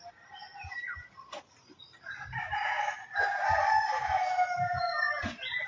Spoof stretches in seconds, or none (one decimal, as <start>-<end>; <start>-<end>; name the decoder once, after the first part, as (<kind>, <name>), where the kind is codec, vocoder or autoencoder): none